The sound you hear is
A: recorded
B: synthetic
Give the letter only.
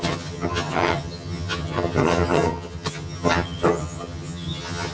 B